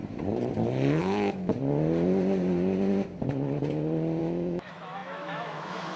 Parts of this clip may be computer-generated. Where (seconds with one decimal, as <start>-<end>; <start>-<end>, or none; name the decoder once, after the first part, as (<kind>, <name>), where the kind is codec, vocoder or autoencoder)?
1.0-1.5 (autoencoder, DAC-VAE); 4.2-6.0